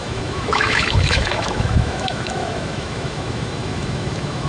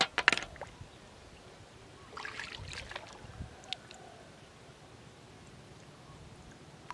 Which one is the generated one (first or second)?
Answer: first